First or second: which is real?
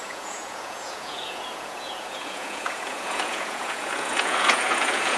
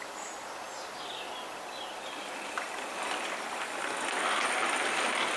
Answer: second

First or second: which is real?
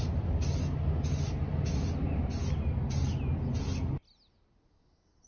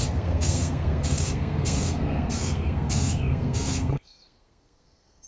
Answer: first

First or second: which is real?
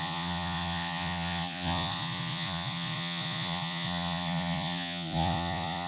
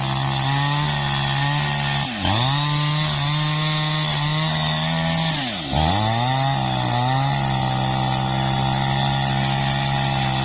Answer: second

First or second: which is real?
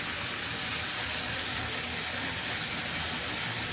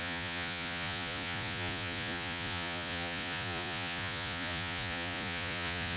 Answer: first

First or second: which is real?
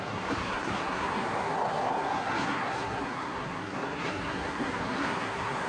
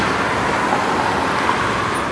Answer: second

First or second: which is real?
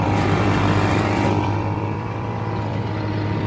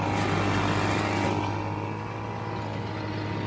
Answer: second